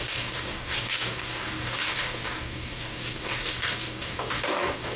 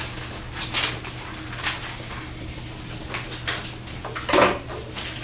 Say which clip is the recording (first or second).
second